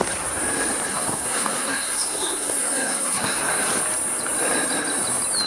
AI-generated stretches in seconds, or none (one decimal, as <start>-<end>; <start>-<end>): 0.9-3.5